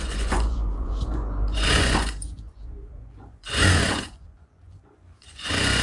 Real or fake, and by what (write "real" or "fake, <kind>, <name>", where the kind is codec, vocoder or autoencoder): fake, vocoder, Vocos